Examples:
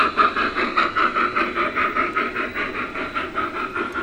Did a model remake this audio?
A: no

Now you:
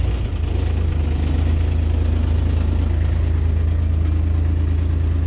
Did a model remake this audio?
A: no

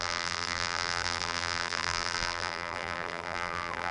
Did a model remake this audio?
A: yes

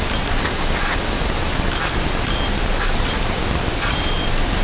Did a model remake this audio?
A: no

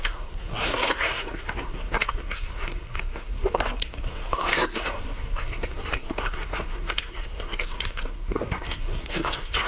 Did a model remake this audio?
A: yes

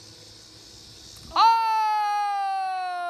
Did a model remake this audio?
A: no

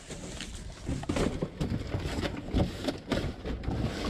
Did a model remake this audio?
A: no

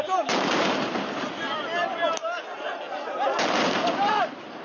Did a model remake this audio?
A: no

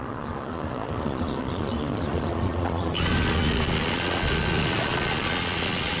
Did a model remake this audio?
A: yes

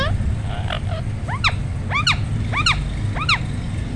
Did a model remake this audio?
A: no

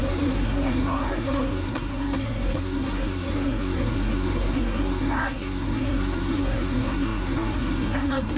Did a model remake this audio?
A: yes